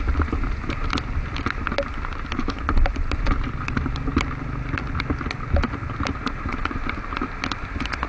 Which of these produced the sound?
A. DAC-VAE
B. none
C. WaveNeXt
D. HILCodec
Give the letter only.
B